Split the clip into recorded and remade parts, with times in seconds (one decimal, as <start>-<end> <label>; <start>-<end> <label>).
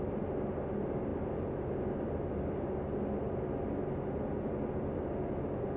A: 0.0-5.8 recorded